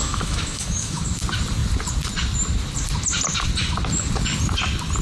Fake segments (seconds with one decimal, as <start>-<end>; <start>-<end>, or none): 0.0-1.2

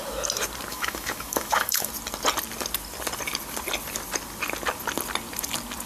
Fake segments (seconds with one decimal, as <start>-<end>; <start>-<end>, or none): 0.7-1.9

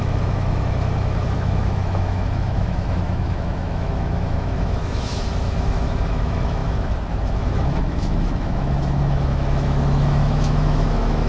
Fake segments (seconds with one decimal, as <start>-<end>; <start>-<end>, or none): 0.0-11.3